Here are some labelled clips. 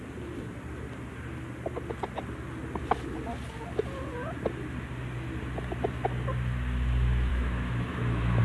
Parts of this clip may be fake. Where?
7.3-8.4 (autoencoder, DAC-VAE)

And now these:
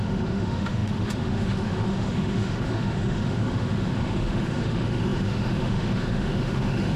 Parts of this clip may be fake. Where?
0.0-7.0 (autoencoder, DAC-VAE)

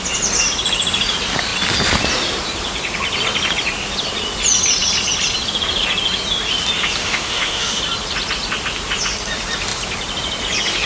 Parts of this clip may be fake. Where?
7.0-7.8 (autoencoder, DAC-VAE)

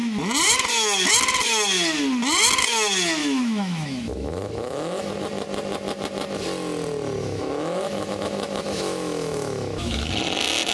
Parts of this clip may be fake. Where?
3.2-5.1 (autoencoder, DAC-VAE); 7.2-10.1